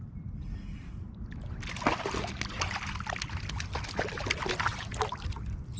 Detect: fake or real real